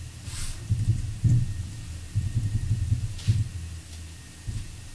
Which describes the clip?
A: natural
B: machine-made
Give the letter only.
A